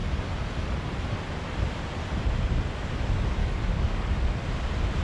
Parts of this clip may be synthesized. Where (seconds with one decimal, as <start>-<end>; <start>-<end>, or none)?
3.4-4.1